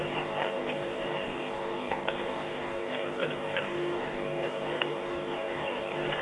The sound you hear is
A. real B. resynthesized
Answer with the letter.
B